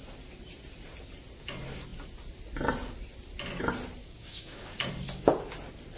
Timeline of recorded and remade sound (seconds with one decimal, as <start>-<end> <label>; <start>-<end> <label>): 0.0-4.0 recorded; 4.0-4.9 remade; 4.9-6.0 recorded